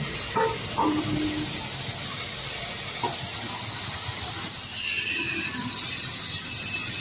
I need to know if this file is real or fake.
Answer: real